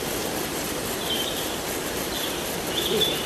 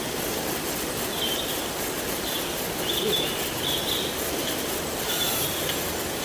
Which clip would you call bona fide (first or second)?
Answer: second